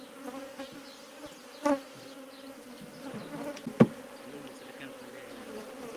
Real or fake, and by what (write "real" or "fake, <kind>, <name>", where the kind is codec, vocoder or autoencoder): real